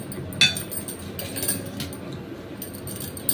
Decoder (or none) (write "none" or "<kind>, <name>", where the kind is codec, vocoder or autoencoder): none